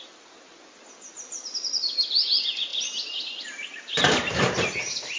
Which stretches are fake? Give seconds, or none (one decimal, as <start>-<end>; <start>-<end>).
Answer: none